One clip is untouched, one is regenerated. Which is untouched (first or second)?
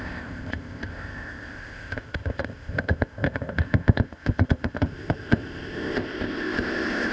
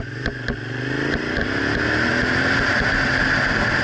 second